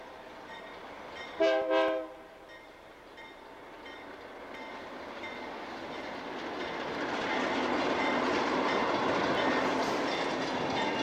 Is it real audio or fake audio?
real